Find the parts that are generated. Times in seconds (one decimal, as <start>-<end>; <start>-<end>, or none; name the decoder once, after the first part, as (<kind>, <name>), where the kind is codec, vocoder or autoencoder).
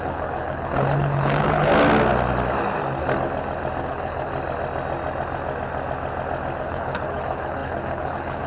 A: 0.0-1.7 (codec, HILCodec); 3.8-4.3; 6.6-8.5